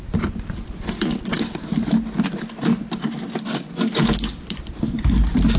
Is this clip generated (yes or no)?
no